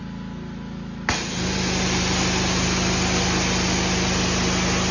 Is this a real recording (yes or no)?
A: yes